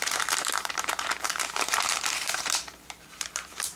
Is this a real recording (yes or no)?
no